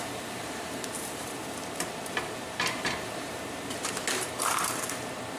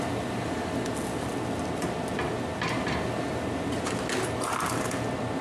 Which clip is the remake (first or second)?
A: first